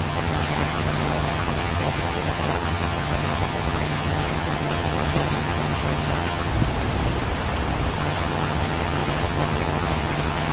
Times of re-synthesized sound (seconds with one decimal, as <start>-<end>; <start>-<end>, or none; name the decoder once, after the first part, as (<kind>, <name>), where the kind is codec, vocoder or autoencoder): 0.0-6.5 (vocoder, HiFi-GAN); 8.0-10.5